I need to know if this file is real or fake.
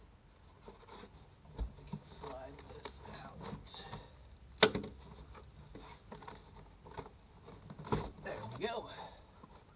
real